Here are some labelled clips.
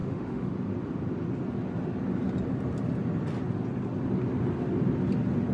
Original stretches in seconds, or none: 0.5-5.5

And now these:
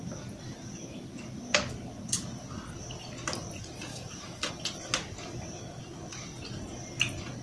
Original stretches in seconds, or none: 0.0-3.9; 4.5-7.4

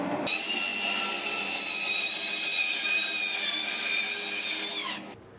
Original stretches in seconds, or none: 0.0-5.4

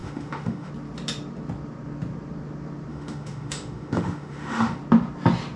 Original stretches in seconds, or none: 0.7-2.9; 4.8-5.6

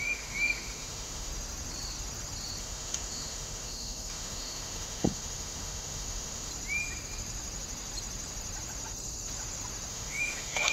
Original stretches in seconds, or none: 1.3-2.6; 6.5-9.9

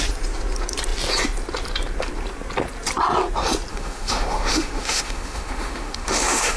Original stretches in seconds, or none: 0.0-3.7

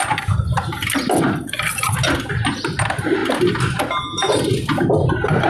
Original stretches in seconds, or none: 0.0-5.5

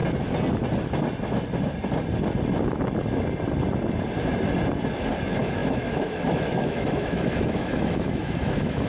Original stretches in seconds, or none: 0.0-4.9